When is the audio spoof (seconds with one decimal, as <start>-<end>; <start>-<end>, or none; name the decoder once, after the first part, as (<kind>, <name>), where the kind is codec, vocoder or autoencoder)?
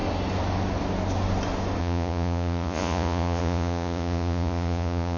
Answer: 1.8-5.2 (vocoder, Vocos)